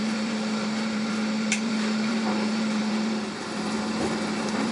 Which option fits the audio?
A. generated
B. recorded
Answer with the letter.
A